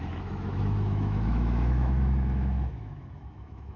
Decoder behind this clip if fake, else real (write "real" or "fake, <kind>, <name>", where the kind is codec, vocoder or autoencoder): fake, autoencoder, DAC-VAE